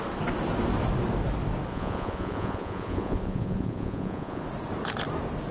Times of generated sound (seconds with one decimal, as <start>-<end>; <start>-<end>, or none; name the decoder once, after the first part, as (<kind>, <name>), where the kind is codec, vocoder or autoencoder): 1.7-4.4 (vocoder, Vocos)